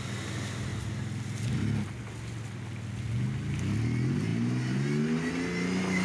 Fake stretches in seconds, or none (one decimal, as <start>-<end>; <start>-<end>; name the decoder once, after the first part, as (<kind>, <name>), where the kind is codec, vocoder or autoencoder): none